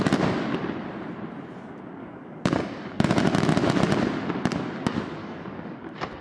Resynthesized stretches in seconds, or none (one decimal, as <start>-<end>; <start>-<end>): 2.0-3.1; 5.2-6.2